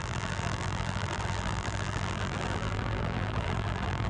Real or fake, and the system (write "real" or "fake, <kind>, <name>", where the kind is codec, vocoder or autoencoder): fake, vocoder, BigVGAN v2